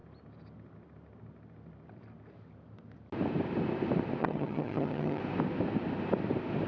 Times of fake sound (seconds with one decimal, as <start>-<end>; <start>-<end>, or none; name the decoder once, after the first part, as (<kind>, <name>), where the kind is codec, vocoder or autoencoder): 4.2-5.2 (vocoder, HiFi-GAN)